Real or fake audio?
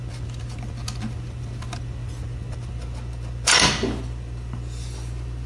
real